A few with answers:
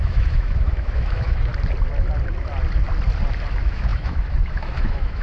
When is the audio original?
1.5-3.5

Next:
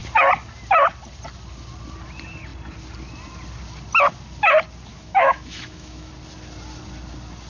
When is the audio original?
0.0-4.9; 6.1-7.5